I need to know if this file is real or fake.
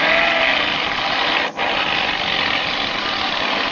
real